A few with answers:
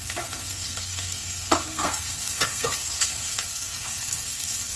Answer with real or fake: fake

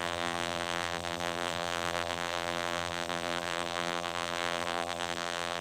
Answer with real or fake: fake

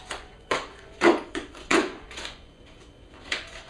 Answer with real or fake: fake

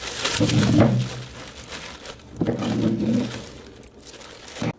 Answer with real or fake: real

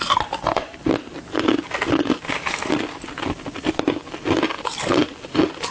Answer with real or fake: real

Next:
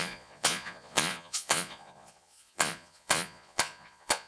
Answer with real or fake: fake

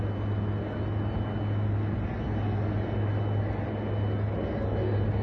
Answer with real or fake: real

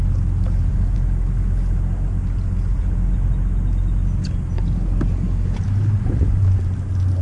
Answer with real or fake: real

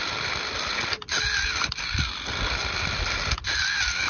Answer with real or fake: real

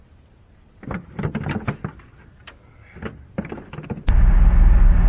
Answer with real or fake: real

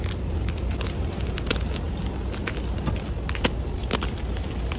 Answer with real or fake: real